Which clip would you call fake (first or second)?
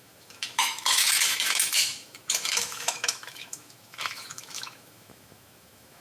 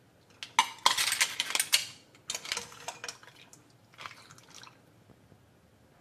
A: first